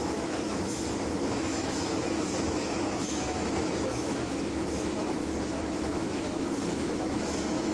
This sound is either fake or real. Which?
fake